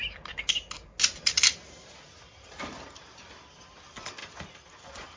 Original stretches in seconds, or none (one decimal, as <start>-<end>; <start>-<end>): 0.0-5.2